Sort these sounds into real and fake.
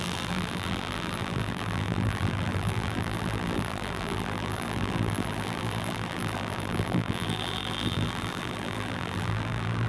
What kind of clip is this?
fake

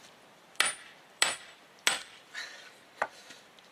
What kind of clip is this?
fake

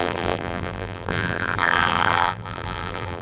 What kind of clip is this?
fake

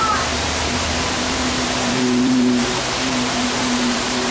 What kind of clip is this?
fake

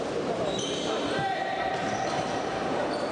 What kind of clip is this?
fake